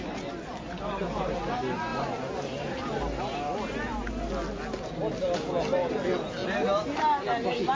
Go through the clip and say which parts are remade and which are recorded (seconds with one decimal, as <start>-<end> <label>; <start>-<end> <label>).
0.0-7.7 recorded